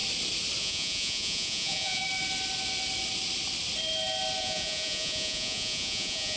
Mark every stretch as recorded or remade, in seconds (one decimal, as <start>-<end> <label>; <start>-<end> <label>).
0.0-0.6 recorded; 0.6-2.0 remade; 2.0-4.4 recorded; 4.4-6.4 remade